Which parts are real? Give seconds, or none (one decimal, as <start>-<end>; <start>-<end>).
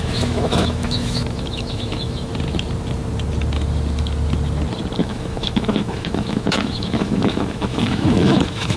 2.3-5.0